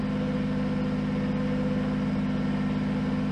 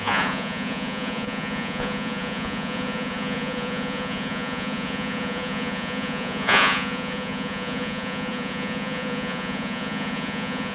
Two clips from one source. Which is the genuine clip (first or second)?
first